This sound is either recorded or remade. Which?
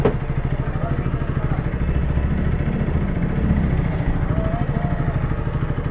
recorded